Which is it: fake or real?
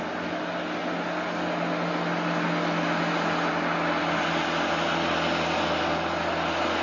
real